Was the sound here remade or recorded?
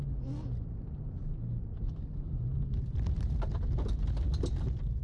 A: recorded